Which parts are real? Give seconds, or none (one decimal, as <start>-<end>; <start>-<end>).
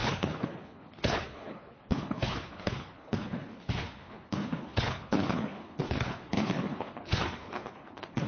none